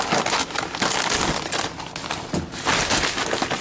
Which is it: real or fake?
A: real